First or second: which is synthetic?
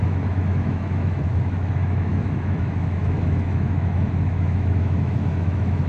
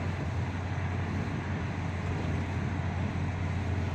first